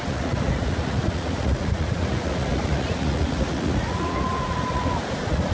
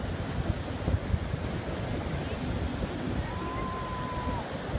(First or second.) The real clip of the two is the second